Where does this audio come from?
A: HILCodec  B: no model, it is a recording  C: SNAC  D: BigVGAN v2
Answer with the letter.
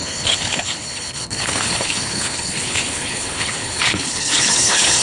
A